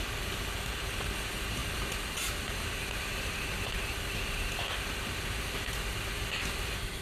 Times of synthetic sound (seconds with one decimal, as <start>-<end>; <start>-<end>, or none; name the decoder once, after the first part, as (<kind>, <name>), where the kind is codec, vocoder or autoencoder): none